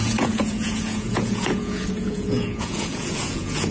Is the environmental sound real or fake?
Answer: fake